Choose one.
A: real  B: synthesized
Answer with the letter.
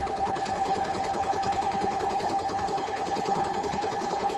B